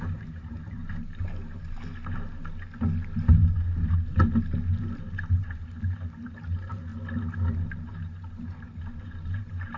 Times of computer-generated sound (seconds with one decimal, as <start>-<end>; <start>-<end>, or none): 0.0-0.8; 5.4-6.9; 8.3-9.8